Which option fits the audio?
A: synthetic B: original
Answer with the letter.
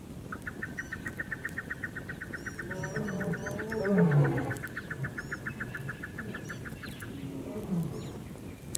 B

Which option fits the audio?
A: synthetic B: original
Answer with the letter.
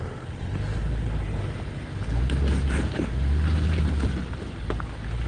B